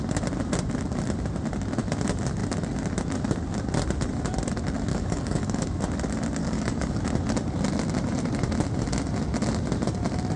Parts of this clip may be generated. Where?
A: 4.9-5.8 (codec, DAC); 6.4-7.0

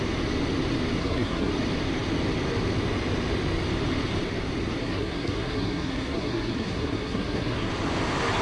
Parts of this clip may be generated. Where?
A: 1.0-1.5 (codec, SNAC); 4.8-7.7

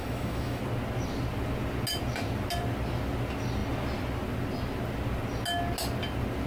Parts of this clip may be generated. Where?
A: 0.0-0.6 (autoencoder, DAC-VAE)

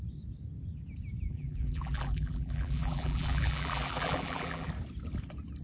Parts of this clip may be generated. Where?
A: 1.3-4.7 (vocoder, BigVGAN v2)

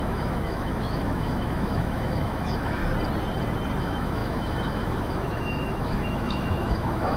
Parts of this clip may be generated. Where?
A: 0.0-2.8 (autoencoder, DAC-VAE); 3.8-7.2

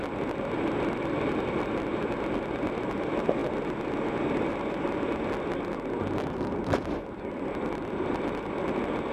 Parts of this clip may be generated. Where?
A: 0.0-9.1 (vocoder, BigVGAN v2)

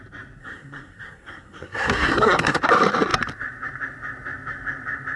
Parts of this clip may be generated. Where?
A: 0.4-2.6 (codec, SNAC)